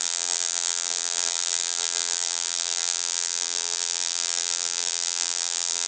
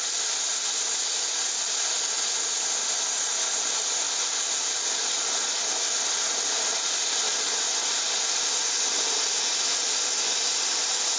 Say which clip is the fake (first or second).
first